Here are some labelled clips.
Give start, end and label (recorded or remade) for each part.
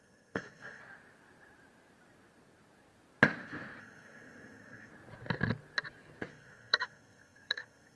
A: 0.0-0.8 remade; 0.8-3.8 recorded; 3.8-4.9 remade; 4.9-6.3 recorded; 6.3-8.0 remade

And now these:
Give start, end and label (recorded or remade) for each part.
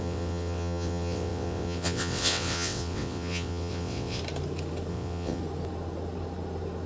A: 0.0-4.2 remade; 4.2-4.9 recorded; 4.9-5.4 remade; 5.4-6.9 recorded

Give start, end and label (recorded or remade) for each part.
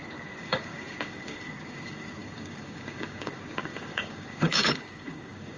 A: 0.0-5.6 remade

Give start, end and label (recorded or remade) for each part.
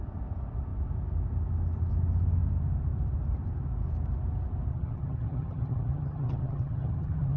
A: 0.0-4.7 recorded; 4.7-7.4 remade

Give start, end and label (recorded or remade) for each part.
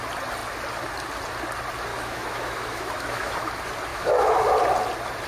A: 0.0-1.9 recorded; 1.9-3.5 remade; 3.5-3.9 recorded; 3.9-4.5 remade; 4.5-5.3 recorded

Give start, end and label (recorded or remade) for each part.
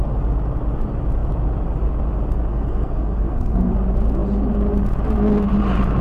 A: 0.0-2.5 recorded; 2.5-3.7 remade; 3.7-6.0 recorded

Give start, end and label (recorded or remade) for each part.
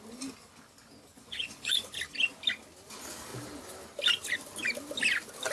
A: 0.0-1.1 recorded; 1.1-2.0 remade; 2.0-5.5 recorded